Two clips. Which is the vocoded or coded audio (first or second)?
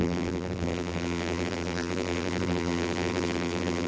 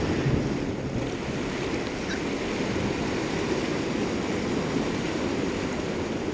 first